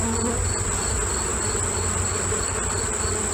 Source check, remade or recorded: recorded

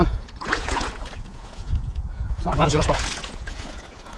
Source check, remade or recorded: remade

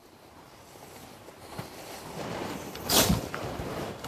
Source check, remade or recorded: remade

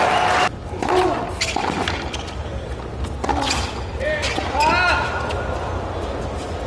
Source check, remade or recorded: recorded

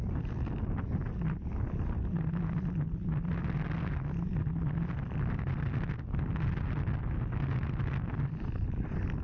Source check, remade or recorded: recorded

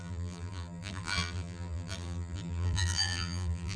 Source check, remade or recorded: remade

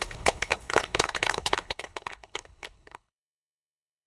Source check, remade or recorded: remade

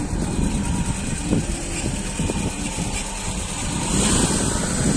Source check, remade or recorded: recorded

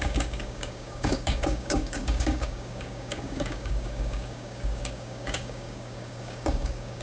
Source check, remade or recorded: remade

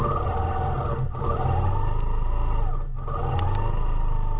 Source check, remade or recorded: recorded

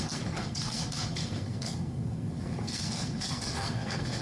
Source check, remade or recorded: remade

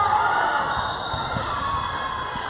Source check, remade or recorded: recorded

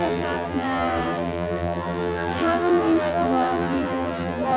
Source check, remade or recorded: remade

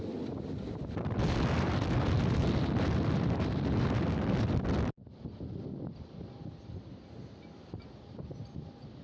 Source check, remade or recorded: recorded